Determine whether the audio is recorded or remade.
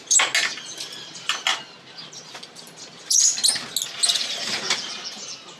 recorded